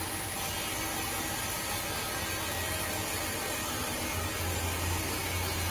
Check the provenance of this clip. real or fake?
real